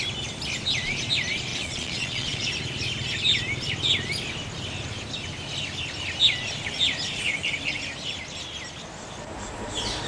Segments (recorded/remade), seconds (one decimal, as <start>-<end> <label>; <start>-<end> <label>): 0.0-1.5 recorded; 1.5-2.5 remade; 2.5-10.1 recorded